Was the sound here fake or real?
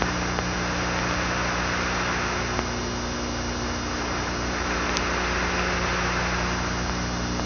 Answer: real